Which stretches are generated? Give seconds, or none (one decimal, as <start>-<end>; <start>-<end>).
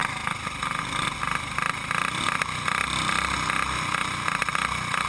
none